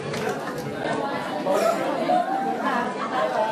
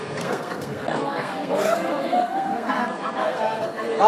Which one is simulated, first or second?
second